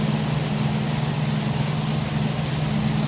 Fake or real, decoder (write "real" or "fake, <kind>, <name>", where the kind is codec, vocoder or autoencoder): real